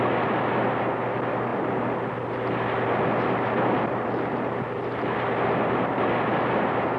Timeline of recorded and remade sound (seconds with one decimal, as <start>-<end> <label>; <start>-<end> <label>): 0.0-7.0 recorded